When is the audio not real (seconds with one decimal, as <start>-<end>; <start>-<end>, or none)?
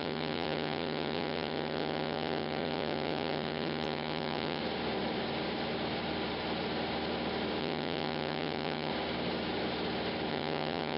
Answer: 0.0-4.6; 7.6-8.9; 10.3-11.0